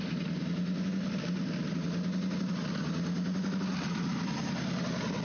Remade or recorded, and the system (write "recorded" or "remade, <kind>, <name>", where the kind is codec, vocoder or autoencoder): recorded